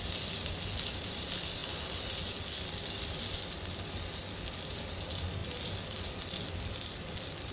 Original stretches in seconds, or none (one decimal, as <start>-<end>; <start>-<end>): 0.0-7.5

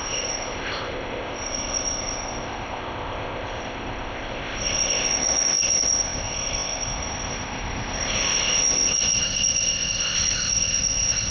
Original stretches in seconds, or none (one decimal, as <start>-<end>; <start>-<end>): none

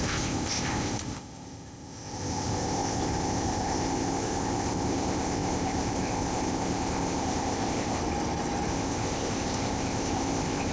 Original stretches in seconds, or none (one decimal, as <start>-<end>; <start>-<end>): 8.0-8.7